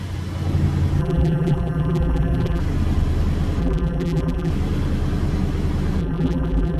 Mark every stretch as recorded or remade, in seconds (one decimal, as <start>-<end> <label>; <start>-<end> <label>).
0.0-1.0 recorded; 1.0-2.6 remade; 2.6-3.6 recorded; 3.6-4.5 remade; 4.5-6.0 recorded; 6.0-6.8 remade